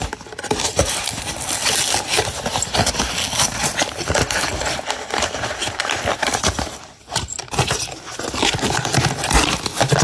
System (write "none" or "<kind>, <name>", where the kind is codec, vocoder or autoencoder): none